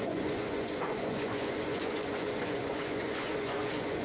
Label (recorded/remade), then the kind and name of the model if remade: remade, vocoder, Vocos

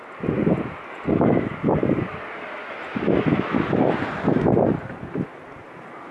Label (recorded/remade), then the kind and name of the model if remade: recorded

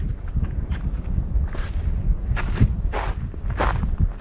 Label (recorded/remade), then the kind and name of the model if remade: recorded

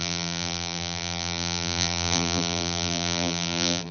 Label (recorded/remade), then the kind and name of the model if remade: remade, vocoder, BigVGAN v2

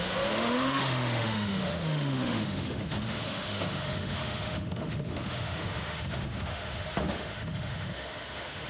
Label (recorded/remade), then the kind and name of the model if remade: remade, autoencoder, DAC-VAE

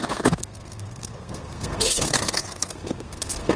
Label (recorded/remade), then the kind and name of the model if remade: remade, codec, SNAC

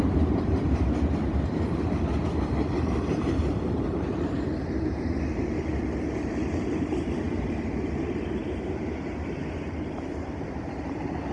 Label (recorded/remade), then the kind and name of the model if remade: remade, vocoder, BigVGAN v2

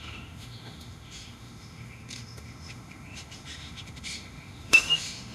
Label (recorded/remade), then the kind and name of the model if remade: remade, autoencoder, DAC-VAE